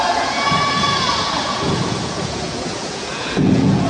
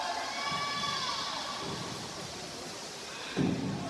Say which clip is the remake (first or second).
first